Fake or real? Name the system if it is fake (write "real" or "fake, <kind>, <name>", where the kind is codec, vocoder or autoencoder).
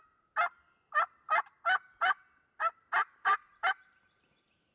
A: real